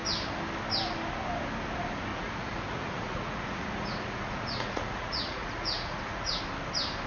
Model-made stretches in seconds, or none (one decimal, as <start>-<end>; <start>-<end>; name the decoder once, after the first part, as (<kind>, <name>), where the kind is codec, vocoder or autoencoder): 2.1-6.4 (vocoder, Vocos)